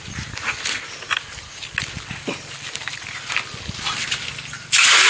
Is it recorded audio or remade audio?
recorded